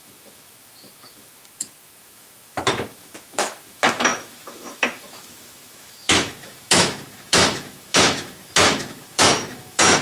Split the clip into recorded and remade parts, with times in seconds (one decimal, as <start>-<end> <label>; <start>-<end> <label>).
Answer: 0.0-10.0 remade